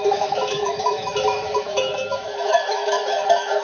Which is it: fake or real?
fake